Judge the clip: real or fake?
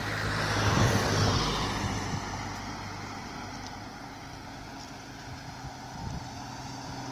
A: real